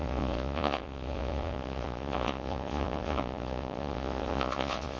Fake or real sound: fake